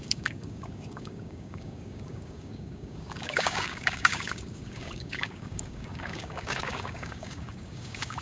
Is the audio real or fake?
fake